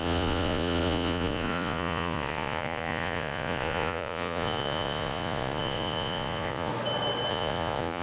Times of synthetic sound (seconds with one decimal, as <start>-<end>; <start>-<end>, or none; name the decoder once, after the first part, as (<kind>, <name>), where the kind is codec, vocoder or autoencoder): 0.0-6.7 (vocoder, Vocos); 7.3-8.0

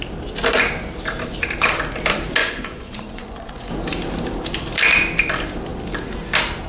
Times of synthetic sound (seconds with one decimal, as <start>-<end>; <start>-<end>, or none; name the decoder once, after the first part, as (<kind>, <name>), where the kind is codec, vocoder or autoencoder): 2.4-3.7 (vocoder, Vocos)

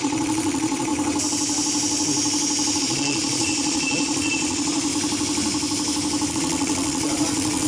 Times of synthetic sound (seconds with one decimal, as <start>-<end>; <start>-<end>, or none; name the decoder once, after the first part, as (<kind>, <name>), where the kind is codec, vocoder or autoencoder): 0.0-0.9 (vocoder, Vocos); 2.8-4.9; 6.3-7.7

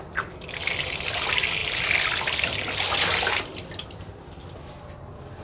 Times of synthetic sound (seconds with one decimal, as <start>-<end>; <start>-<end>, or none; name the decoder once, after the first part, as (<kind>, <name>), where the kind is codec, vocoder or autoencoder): none

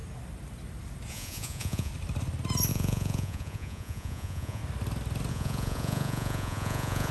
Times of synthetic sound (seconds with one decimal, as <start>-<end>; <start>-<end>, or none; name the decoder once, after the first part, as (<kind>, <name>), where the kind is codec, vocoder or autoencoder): 1.1-1.9 (vocoder, Vocos); 2.7-4.6; 5.3-7.1

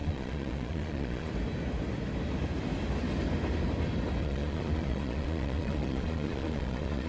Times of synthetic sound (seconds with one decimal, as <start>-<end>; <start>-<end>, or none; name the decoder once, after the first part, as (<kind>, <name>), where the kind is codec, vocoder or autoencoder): 0.0-1.3 (vocoder, Vocos); 4.2-7.1